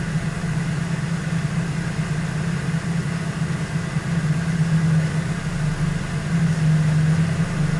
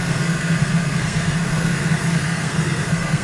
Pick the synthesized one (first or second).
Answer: second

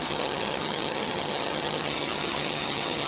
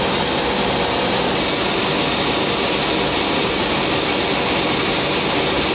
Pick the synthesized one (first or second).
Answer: first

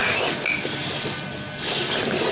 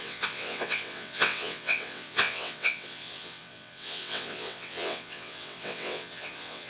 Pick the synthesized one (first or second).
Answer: second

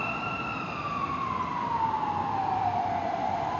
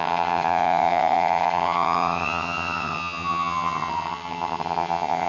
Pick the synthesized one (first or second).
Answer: second